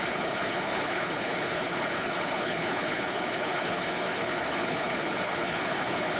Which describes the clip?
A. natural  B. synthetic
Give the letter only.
B